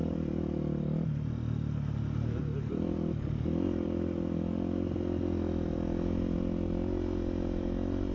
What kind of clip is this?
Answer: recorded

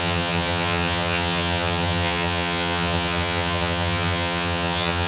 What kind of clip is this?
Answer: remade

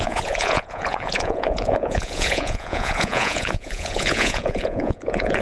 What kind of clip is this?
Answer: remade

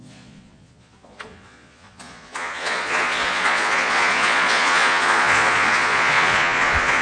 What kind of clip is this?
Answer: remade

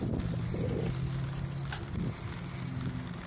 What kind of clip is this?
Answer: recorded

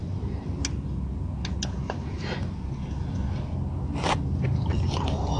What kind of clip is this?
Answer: recorded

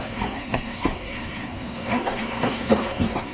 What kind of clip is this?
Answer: remade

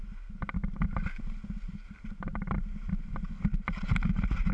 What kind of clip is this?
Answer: recorded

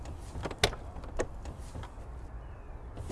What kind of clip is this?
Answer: recorded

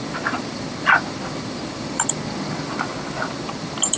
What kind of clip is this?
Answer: remade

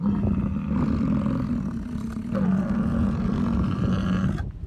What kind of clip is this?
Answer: recorded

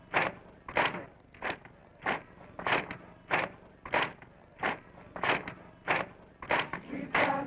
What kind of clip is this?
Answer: recorded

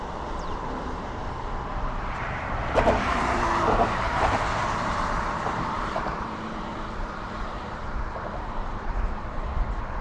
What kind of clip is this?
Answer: remade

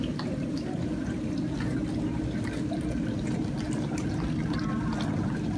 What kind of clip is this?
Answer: recorded